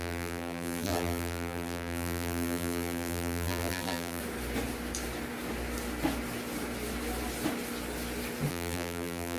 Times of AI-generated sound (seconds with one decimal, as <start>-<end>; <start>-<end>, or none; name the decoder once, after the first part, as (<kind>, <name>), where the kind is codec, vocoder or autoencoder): 0.0-4.2 (vocoder, BigVGAN v2); 8.5-9.4